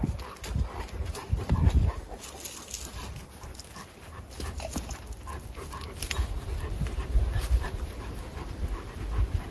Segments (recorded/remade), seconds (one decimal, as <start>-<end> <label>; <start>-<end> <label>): 0.0-9.5 recorded